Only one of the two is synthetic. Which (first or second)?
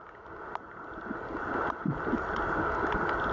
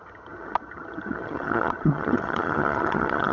second